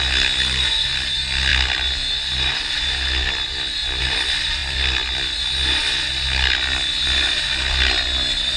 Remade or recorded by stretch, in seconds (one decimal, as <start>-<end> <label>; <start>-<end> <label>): 0.0-8.6 recorded